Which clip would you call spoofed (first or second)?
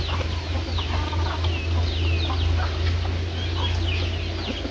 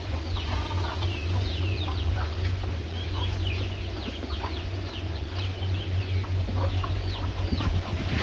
second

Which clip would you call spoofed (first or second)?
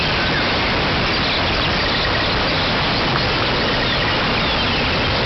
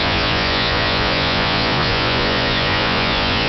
second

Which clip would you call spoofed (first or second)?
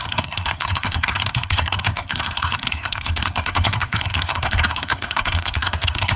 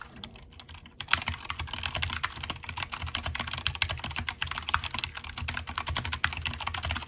first